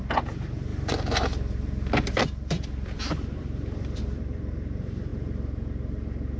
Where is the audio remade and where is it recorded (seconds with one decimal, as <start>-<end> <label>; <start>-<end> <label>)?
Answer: 0.0-0.7 remade; 0.7-2.2 recorded; 2.2-5.1 remade; 5.1-6.4 recorded